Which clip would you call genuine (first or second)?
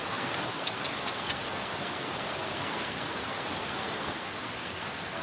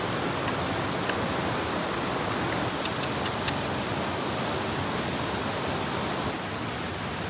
second